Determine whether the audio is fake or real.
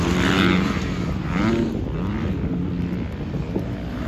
real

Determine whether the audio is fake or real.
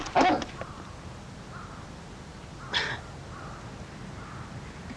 real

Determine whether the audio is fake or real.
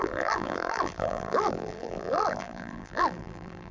fake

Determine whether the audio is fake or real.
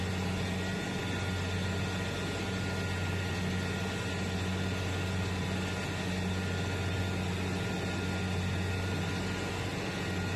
real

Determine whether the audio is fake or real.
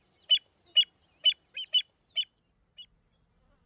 real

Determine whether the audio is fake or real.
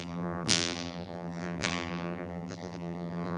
fake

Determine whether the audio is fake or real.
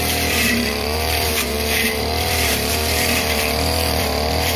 fake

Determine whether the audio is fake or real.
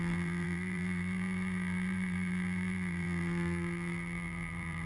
fake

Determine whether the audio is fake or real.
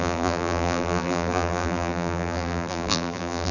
fake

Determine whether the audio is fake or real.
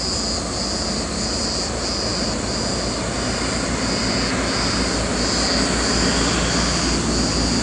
real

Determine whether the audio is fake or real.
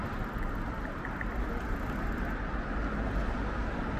real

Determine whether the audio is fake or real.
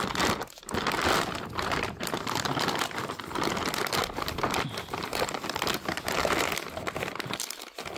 real